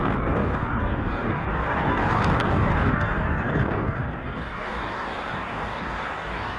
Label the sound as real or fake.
fake